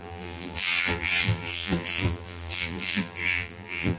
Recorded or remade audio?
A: remade